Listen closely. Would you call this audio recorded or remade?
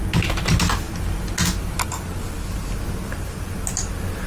recorded